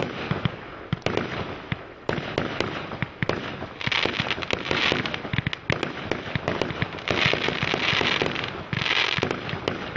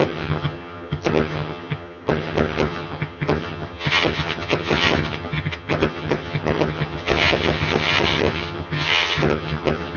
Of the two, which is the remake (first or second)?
second